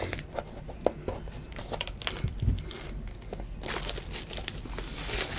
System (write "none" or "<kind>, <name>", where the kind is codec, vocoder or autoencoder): none